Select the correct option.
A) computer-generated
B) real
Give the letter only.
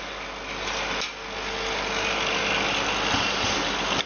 B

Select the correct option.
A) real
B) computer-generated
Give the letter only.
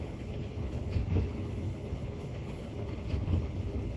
B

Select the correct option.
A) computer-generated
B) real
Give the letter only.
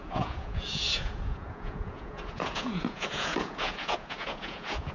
A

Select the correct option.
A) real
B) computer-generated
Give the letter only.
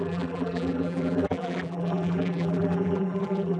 B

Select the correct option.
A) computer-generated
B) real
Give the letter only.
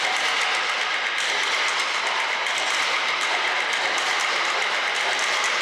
B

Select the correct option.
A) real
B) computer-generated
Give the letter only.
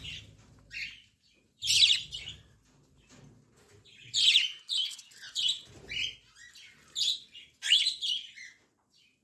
A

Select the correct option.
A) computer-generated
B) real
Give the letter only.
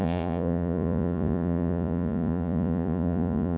A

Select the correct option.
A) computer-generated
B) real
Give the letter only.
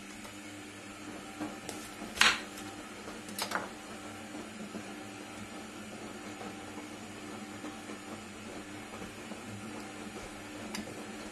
B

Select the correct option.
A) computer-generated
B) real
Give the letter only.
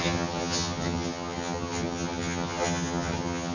A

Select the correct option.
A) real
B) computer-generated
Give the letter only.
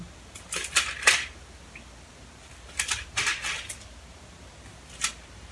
A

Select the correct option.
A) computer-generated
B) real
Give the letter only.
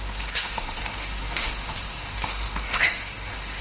A